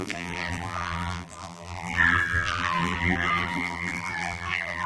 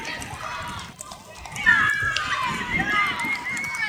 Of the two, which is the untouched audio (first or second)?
second